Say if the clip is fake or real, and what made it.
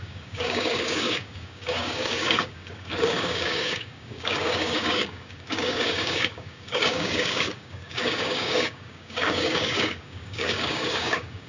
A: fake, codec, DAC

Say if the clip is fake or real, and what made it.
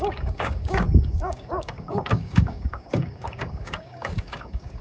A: fake, codec, DAC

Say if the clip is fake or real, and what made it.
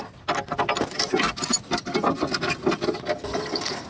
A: real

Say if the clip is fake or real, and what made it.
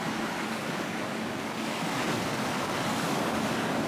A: fake, codec, DAC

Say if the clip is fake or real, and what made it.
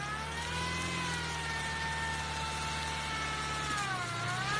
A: real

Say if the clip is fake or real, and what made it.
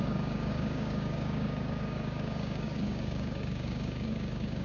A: fake, codec, DAC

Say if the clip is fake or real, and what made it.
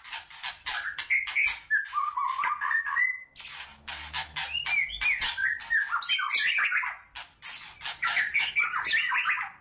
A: real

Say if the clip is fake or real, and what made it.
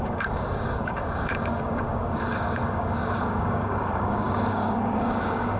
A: fake, codec, DAC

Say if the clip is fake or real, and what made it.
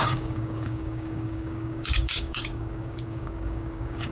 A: fake, codec, DAC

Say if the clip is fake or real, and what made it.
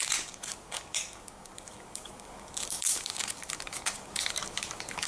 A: fake, codec, DAC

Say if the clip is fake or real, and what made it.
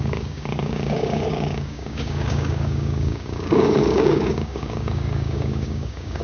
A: fake, codec, DAC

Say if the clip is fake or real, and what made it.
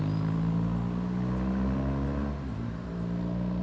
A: real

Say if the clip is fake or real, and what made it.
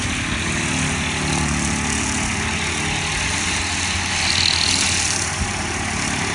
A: real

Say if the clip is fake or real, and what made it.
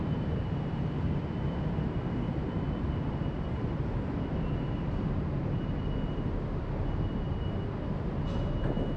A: real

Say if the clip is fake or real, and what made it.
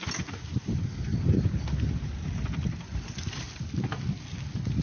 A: real